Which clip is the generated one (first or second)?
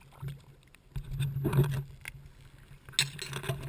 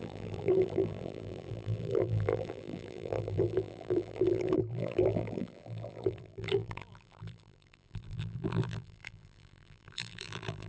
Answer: second